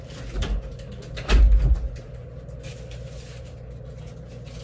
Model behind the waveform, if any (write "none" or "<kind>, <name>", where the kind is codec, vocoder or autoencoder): none